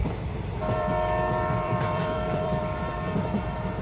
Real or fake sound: fake